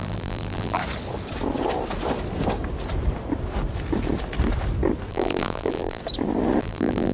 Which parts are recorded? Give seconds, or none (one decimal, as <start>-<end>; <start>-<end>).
0.8-5.1; 6.0-6.6